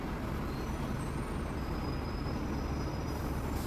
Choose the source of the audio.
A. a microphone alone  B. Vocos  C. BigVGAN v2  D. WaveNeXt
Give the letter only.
A